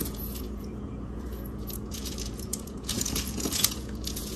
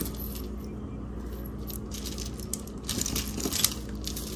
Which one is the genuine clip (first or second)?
second